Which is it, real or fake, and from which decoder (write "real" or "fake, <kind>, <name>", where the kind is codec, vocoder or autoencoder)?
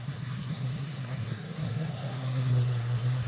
fake, codec, SNAC